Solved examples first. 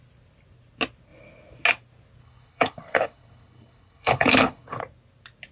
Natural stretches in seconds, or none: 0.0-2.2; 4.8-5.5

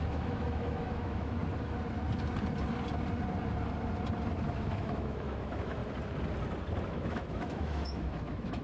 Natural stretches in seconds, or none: 1.4-4.4; 5.8-6.9